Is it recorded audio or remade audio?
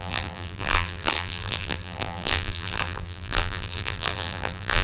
remade